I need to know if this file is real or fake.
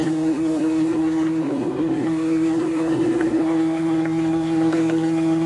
fake